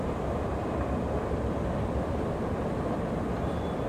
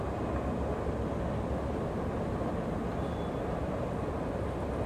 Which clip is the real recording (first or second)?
second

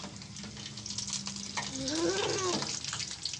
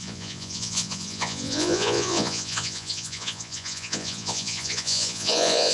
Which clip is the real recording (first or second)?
first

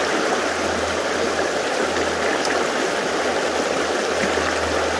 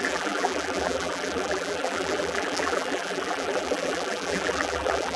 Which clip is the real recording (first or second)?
first